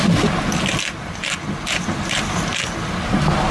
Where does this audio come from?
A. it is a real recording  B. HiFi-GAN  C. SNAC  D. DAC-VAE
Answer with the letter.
A